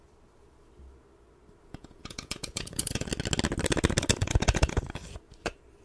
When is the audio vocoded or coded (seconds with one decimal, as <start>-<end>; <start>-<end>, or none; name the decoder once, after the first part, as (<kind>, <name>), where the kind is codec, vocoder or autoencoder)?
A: 1.6-3.1 (vocoder, Vocos); 4.2-4.8